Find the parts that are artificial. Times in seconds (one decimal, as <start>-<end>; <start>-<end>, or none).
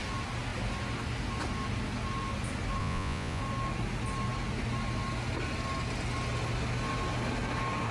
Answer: 2.8-3.4